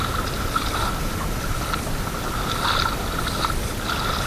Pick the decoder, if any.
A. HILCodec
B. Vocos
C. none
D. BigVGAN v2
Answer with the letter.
D